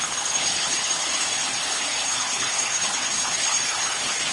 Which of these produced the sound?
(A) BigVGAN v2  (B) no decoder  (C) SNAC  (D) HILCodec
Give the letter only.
D